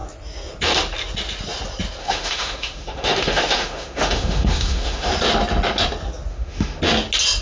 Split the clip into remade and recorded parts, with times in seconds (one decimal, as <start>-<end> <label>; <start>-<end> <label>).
0.0-2.0 recorded; 2.0-5.1 remade; 5.1-6.3 recorded; 6.3-6.8 remade; 6.8-7.4 recorded